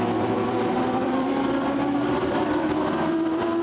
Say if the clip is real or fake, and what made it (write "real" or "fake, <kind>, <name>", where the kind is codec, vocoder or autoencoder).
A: fake, vocoder, BigVGAN v2